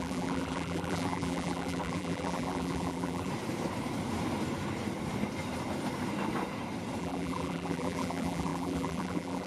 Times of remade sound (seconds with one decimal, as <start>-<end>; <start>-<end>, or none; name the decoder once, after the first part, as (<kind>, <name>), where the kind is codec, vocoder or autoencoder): 0.0-3.3 (vocoder, BigVGAN v2); 7.0-9.5